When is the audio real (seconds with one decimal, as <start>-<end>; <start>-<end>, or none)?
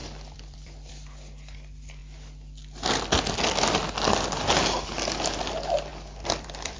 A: 0.9-5.9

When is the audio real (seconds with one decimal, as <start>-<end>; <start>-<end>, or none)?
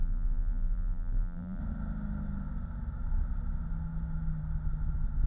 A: 1.6-5.3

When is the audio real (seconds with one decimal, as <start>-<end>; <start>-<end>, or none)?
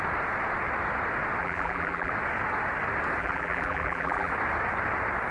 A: 0.0-1.4; 2.1-3.2; 4.3-5.3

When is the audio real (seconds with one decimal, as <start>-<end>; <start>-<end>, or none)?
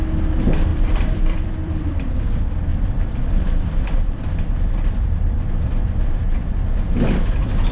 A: 0.0-0.7; 2.1-2.7; 6.2-7.7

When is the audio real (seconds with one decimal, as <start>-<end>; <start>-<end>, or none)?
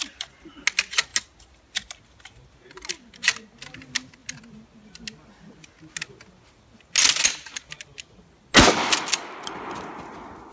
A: 0.0-10.5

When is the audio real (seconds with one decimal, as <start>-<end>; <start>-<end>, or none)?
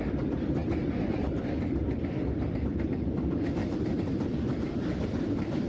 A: 0.0-3.6